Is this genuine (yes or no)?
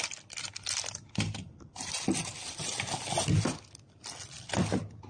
yes